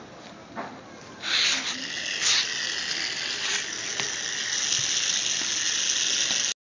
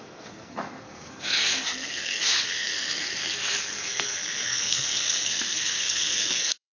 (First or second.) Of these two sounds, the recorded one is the first